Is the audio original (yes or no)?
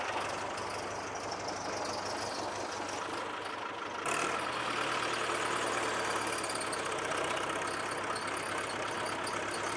yes